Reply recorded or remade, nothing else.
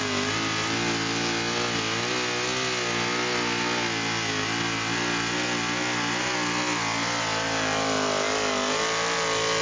recorded